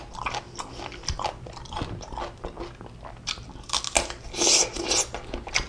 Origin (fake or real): real